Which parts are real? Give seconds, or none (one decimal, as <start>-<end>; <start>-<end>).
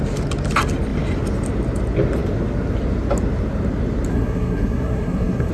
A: 0.0-4.1